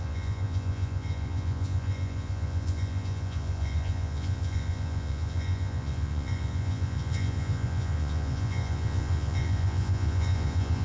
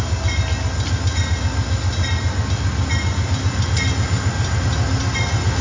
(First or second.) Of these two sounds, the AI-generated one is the first